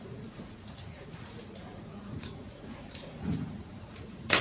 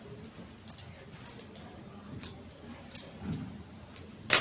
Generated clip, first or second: first